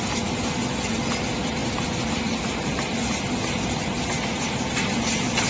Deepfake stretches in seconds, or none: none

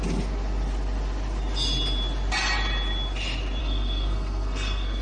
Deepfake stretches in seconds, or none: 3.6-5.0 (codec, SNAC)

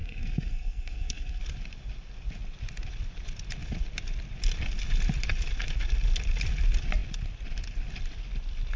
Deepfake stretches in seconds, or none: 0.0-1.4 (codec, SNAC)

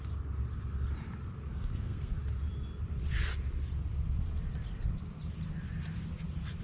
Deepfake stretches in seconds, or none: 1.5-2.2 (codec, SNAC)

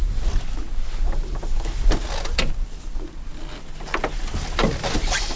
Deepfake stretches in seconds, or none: none

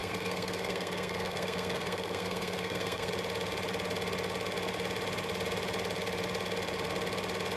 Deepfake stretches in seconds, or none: 0.0-3.1 (codec, SNAC)

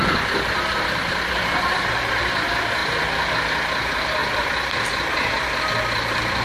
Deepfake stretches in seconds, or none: none

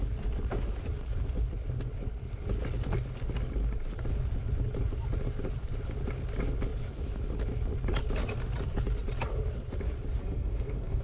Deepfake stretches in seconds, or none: 10.2-11.0 (codec, SNAC)